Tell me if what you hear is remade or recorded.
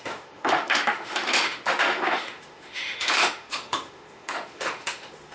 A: remade